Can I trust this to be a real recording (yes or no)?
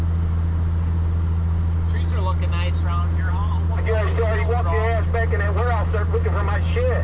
yes